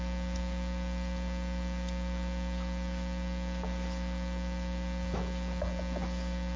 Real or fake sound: real